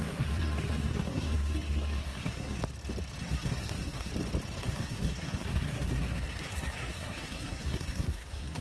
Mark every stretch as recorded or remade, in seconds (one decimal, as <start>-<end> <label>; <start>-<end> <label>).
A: 0.0-2.6 remade; 2.6-3.2 recorded; 3.2-4.1 remade; 4.1-4.6 recorded; 4.6-8.6 remade